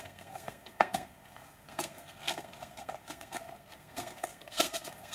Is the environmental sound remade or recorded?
remade